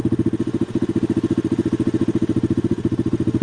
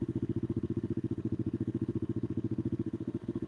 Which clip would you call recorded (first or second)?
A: first